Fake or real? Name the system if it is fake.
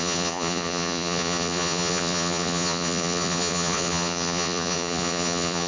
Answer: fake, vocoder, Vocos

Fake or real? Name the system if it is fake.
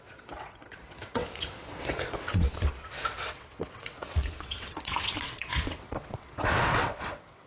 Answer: fake, vocoder, WaveNeXt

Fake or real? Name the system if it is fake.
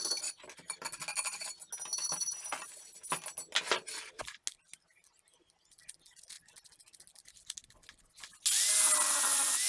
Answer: real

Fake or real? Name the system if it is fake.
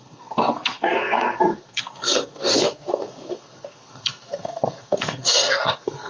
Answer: fake, codec, SNAC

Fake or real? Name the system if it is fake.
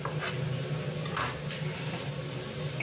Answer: real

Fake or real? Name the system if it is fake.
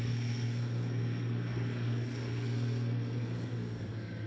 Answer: fake, codec, SNAC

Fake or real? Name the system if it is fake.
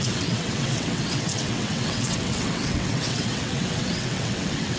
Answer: fake, vocoder, WaveNeXt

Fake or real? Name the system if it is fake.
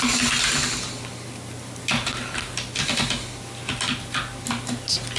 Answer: real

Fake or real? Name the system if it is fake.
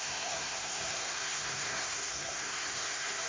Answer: fake, codec, SNAC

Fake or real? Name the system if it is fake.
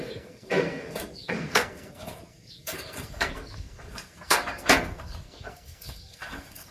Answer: fake, codec, SNAC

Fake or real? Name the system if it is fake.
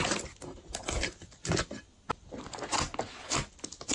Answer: real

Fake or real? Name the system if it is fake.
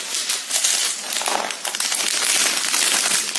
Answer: real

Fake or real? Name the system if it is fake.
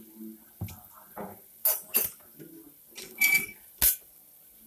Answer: real